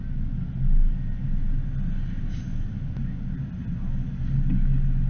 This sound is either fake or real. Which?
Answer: real